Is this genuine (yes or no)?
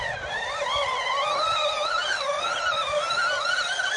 yes